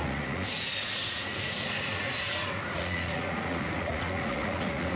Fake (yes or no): yes